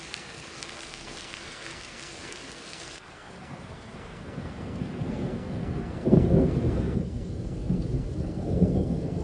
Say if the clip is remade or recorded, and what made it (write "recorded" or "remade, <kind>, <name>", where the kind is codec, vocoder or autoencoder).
remade, codec, SNAC